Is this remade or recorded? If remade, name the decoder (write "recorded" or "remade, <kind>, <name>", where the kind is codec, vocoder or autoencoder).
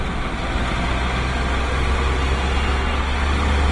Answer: recorded